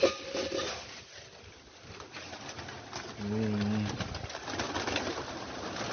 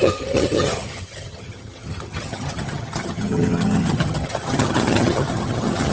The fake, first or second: second